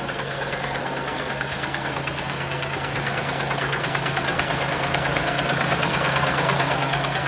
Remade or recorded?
remade